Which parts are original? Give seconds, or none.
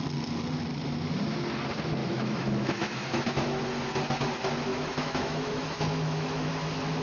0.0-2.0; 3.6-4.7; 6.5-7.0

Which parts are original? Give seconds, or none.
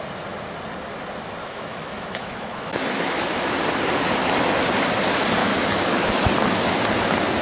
0.0-1.4; 3.5-5.4; 6.3-7.4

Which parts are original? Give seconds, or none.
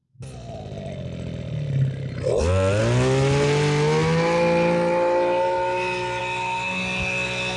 0.0-7.6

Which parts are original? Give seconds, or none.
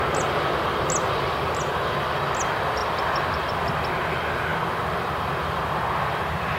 0.0-6.6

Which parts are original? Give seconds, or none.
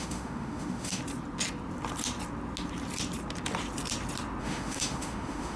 1.0-4.4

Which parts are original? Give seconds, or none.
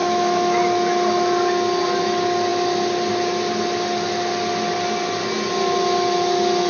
0.6-6.7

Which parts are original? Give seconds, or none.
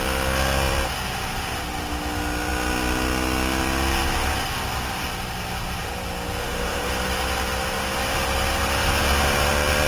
0.0-6.4; 6.9-9.9